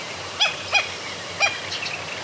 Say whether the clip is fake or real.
real